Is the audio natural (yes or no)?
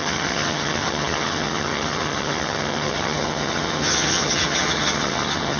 no